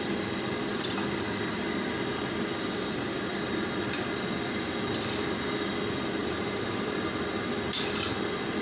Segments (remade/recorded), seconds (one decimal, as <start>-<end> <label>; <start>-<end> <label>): 0.0-6.2 recorded; 6.2-7.1 remade; 7.1-8.6 recorded